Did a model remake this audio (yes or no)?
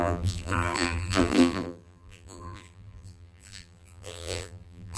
yes